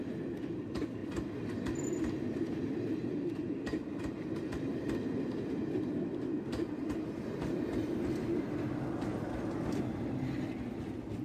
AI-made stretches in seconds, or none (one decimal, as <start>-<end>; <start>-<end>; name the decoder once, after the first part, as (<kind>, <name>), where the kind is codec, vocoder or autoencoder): 1.0-2.9 (vocoder, BigVGAN v2)